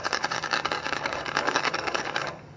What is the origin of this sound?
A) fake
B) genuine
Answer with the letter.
A